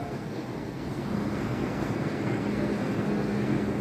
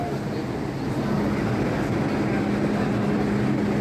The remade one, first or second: first